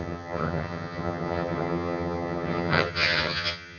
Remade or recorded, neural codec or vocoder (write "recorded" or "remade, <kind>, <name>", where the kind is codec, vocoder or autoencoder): remade, vocoder, HiFi-GAN